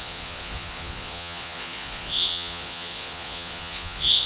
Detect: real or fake fake